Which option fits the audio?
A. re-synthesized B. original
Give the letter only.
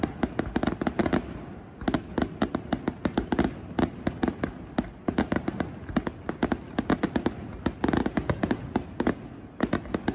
B